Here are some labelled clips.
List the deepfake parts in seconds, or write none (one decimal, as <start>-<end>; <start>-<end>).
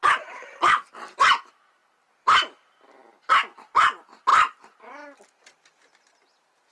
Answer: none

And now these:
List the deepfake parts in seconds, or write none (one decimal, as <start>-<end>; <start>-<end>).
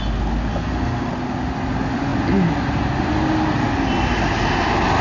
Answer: 0.5-1.1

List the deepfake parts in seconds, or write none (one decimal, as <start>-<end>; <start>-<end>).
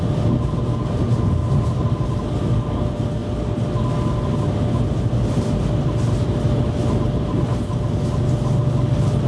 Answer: none